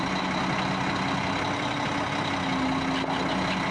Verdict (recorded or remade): recorded